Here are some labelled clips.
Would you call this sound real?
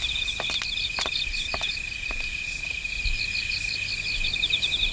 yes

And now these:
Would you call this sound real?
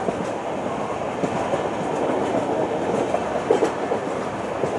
yes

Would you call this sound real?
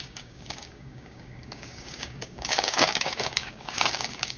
no